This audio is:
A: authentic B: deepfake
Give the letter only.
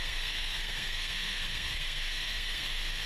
B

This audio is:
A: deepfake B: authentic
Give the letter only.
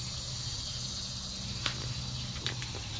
B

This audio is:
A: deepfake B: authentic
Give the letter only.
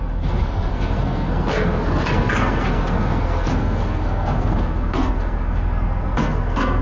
A